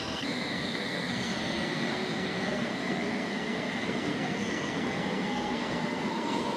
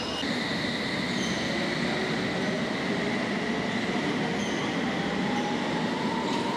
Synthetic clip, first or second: first